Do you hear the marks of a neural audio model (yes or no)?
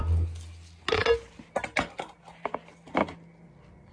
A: no